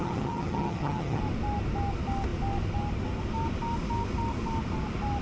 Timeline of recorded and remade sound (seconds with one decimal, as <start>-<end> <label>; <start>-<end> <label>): 0.0-1.2 remade; 1.2-5.2 recorded